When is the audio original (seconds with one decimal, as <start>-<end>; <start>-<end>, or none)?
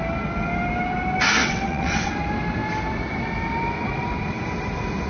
0.0-1.4; 2.1-5.1